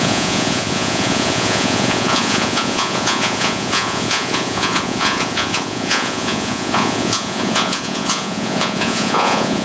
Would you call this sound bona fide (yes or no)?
no